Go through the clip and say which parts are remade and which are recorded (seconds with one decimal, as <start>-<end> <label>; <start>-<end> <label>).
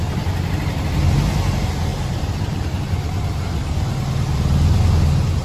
0.0-1.9 recorded; 1.9-2.8 remade; 2.8-5.4 recorded